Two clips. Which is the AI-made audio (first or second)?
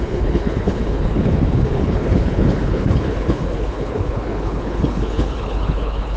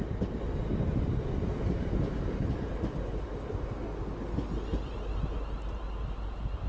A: first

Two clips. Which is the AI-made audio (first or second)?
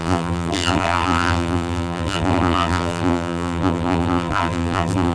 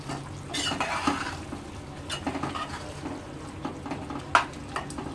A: first